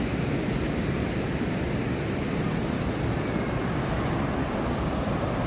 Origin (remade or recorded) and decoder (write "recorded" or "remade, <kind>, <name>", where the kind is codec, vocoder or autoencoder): recorded